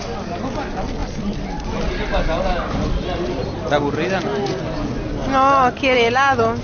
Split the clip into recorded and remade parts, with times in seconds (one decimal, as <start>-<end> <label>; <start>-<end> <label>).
0.0-6.6 recorded